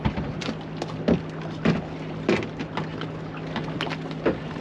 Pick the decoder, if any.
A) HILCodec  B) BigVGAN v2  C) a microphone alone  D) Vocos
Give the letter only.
C